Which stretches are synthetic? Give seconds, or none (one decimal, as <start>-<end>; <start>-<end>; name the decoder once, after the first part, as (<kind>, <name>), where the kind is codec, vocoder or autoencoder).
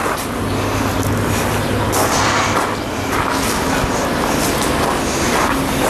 none